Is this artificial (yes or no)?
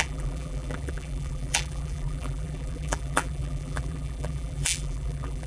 yes